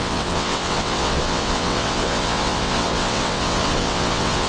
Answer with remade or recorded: remade